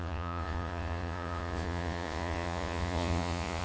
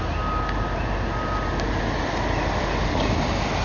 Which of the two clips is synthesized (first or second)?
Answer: first